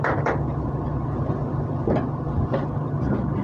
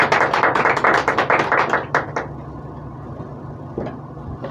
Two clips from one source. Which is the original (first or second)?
second